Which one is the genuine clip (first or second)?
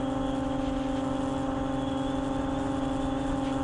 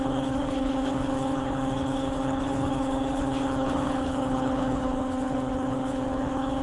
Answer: first